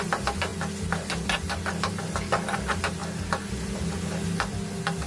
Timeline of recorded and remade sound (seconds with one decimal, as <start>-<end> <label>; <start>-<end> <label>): 0.0-5.1 recorded

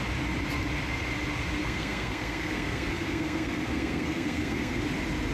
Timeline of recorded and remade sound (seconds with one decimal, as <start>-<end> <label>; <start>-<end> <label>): 0.0-1.6 recorded; 1.6-4.8 remade; 4.8-5.3 recorded

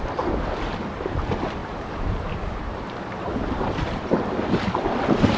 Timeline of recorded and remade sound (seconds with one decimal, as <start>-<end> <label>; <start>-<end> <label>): 0.0-1.6 recorded; 1.6-4.1 remade; 4.1-5.4 recorded

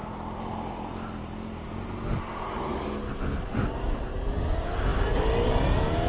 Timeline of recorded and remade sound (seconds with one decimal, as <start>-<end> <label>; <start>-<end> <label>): 0.0-6.1 recorded